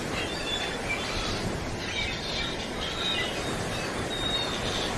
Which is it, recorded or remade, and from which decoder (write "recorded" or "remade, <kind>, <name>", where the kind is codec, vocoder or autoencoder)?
recorded